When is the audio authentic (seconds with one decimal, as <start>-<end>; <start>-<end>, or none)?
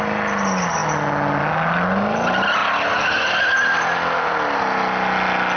0.0-5.6